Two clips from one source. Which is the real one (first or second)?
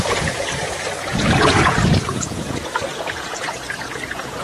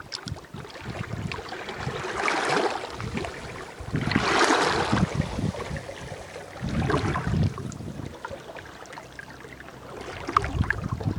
second